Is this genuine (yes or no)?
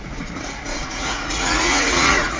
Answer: no